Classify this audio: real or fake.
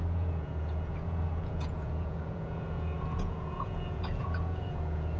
fake